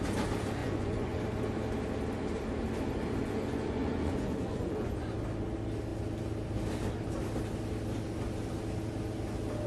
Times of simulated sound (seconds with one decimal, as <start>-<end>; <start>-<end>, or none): 0.6-1.2; 3.2-5.1